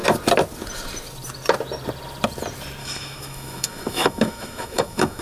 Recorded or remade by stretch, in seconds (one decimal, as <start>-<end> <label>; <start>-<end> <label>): 0.0-2.8 recorded; 2.8-5.2 remade